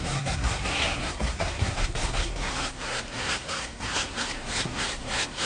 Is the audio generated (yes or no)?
yes